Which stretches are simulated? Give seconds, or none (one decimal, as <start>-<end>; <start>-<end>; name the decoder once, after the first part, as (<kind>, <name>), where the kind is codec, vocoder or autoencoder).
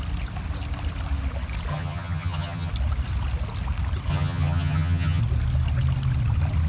1.7-2.7 (vocoder, HiFi-GAN); 4.1-5.2